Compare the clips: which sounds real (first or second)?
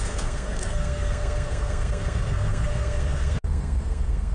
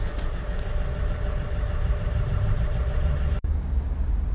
second